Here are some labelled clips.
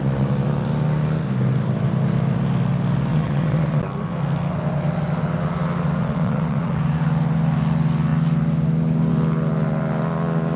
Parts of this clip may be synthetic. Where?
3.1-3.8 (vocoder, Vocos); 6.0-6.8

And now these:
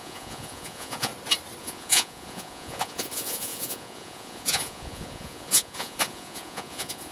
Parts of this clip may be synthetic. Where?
0.0-1.1 (vocoder, Vocos); 1.6-7.1

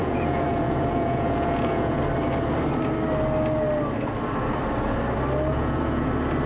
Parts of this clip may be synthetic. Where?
0.0-2.0 (vocoder, Vocos); 5.5-6.1